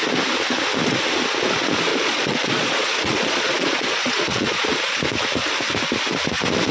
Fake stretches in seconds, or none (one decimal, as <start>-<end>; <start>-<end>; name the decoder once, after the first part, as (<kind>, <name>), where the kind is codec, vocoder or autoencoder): 1.9-5.0 (vocoder, Vocos)